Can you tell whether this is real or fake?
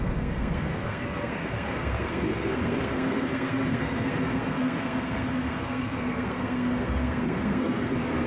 fake